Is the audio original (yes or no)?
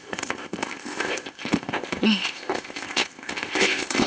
no